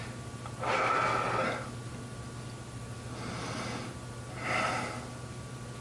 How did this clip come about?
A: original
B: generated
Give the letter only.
A